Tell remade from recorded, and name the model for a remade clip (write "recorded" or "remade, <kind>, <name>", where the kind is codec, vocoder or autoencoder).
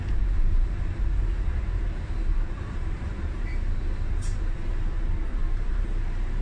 remade, vocoder, BigVGAN v2